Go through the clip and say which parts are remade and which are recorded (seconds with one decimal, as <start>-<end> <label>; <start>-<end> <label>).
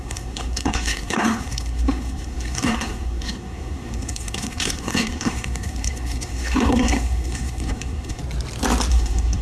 0.0-8.2 remade; 8.2-8.9 recorded; 8.9-9.4 remade